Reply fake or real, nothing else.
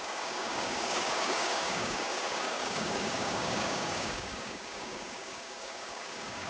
fake